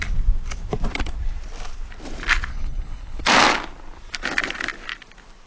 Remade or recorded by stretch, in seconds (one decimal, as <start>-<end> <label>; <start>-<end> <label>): 0.0-2.5 recorded; 2.5-3.2 remade; 3.2-5.5 recorded